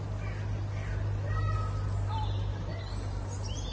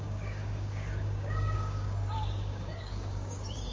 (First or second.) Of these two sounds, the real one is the first